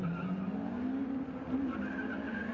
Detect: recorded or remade recorded